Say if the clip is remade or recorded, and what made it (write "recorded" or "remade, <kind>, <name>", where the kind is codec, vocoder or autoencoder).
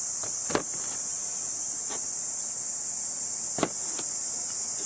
recorded